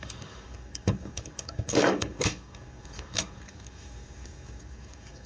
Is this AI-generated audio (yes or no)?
yes